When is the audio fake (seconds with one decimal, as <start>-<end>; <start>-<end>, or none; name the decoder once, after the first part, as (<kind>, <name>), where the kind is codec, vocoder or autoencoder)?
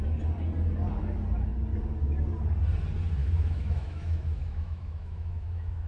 3.2-5.9 (autoencoder, DAC-VAE)